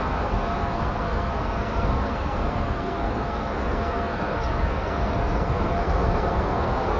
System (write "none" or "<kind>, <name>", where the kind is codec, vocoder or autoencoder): codec, SNAC